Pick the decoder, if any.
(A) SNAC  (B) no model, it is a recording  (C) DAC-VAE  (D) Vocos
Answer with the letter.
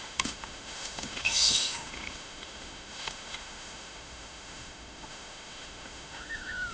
C